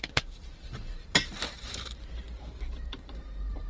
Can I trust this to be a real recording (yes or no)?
no